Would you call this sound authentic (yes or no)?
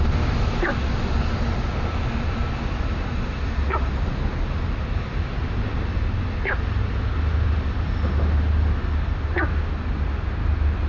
yes